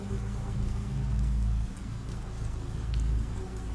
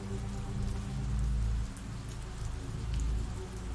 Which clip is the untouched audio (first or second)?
second